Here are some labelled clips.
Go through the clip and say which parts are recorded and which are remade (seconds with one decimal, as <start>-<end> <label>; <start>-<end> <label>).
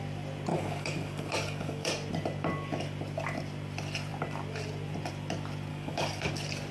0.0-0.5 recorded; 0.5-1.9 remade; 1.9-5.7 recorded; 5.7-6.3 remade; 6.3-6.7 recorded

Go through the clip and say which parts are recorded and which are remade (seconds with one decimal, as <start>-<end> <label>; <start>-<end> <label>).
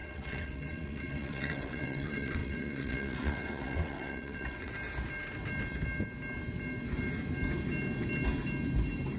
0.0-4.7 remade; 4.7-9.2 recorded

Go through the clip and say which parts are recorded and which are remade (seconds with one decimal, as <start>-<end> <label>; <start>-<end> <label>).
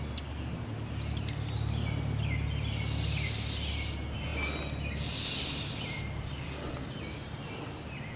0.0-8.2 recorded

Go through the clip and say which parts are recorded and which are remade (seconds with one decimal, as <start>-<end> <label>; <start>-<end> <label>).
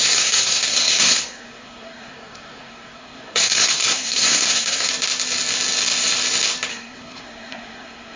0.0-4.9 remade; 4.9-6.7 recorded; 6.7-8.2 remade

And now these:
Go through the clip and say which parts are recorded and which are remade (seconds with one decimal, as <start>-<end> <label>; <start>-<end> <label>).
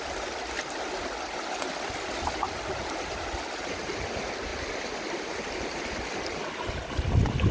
0.0-7.5 recorded